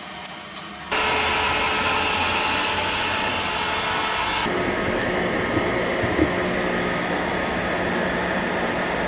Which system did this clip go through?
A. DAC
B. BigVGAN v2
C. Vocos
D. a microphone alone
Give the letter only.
D